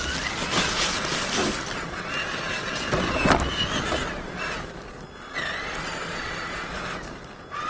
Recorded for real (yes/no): yes